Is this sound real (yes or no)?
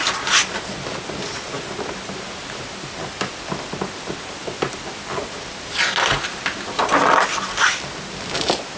yes